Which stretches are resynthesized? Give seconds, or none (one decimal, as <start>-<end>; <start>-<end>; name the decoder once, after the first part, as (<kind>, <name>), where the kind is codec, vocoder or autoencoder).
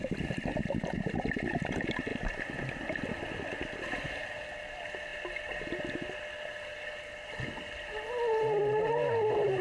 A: none